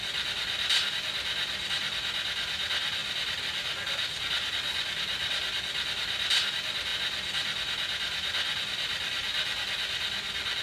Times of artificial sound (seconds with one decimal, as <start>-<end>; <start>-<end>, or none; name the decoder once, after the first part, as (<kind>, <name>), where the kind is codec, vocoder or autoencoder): none